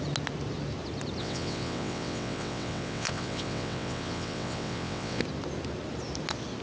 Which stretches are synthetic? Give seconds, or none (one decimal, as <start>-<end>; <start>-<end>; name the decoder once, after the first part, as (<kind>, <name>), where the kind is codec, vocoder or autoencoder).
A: 1.2-5.2 (vocoder, WaveNeXt)